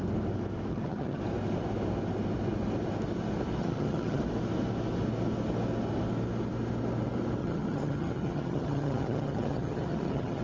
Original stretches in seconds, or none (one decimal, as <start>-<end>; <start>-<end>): 0.0-0.7; 1.2-3.6; 4.2-7.4